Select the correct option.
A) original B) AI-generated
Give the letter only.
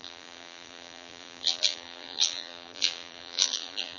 B